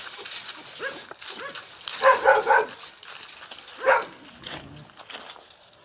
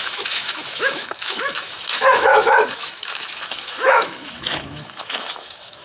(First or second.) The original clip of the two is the first